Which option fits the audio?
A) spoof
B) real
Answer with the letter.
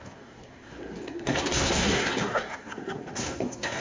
A